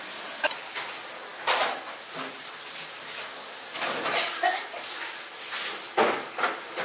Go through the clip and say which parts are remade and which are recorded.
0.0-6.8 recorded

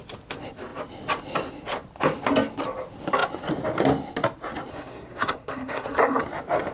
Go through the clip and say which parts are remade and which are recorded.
0.0-4.7 recorded; 4.7-6.2 remade; 6.2-6.7 recorded

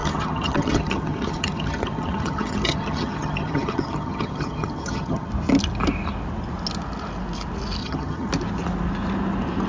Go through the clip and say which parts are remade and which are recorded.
0.0-5.3 remade; 5.3-7.8 recorded; 7.8-8.3 remade; 8.3-9.7 recorded

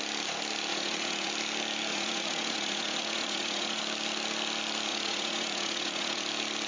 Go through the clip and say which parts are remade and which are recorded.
0.0-0.7 recorded; 0.7-1.3 remade; 1.3-1.9 recorded; 1.9-3.8 remade; 3.8-4.9 recorded; 4.9-6.2 remade; 6.2-6.7 recorded

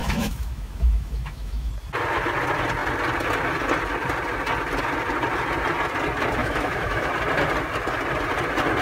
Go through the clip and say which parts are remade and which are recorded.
0.0-1.7 remade; 1.7-6.4 recorded; 6.4-7.1 remade; 7.1-8.8 recorded